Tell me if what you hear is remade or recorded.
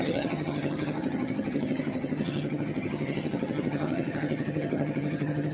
remade